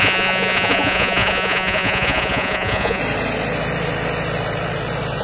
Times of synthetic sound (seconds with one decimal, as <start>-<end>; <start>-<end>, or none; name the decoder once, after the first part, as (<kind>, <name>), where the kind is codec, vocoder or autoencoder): 0.0-3.0 (vocoder, Vocos)